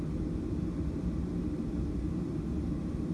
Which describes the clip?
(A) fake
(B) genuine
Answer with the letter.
B